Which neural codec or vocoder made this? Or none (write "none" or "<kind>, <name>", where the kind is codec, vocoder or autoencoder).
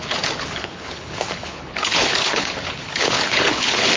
codec, HILCodec